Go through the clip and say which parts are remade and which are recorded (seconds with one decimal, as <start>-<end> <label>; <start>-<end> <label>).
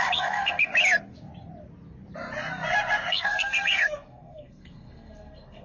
0.0-0.7 remade; 0.7-3.1 recorded; 3.1-5.6 remade